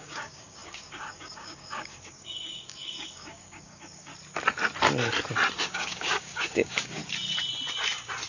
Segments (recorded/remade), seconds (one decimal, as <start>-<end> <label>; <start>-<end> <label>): 0.0-4.1 remade; 4.1-5.6 recorded; 5.6-7.0 remade; 7.0-8.3 recorded

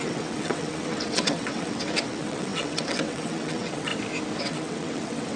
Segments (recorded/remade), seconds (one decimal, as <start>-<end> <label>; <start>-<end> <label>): 0.0-3.9 remade; 3.9-4.4 recorded; 4.4-5.4 remade

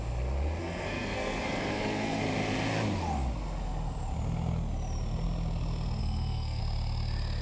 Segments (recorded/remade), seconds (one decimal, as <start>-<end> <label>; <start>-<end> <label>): 0.0-0.6 recorded; 0.6-2.2 remade; 2.2-6.0 recorded; 6.0-6.6 remade; 6.6-7.4 recorded

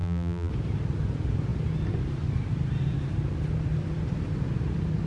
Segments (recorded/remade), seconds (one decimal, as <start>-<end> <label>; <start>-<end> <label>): 0.0-0.5 remade; 0.5-5.1 recorded

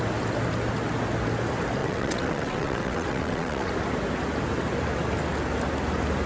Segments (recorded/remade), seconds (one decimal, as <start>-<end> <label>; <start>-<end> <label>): 0.0-1.8 recorded; 1.8-3.7 remade; 3.7-6.3 recorded

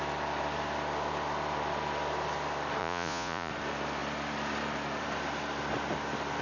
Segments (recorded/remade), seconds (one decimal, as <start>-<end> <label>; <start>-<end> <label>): 0.0-2.8 recorded; 2.8-3.5 remade; 3.5-6.4 recorded

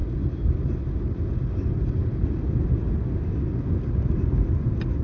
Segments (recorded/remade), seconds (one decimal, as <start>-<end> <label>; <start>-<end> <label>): 0.0-5.0 recorded

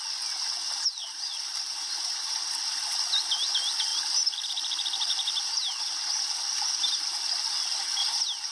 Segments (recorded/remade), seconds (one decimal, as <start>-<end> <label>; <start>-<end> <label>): 0.0-1.0 recorded; 1.0-1.9 remade; 1.9-3.9 recorded; 3.9-5.9 remade; 5.9-8.5 recorded